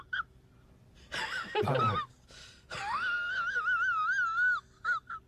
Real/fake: real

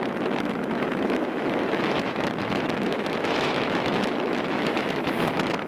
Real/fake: fake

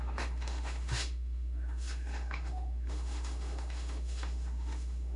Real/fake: fake